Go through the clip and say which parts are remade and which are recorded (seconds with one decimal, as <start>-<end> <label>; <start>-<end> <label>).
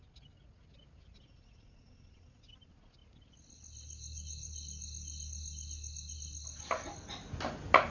0.0-7.9 recorded